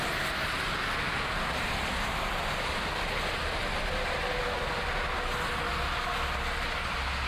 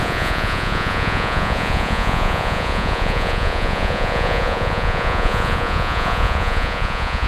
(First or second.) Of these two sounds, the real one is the first